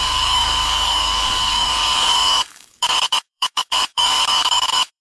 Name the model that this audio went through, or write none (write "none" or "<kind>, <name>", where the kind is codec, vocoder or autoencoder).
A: codec, DAC